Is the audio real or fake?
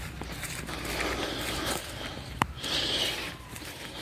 fake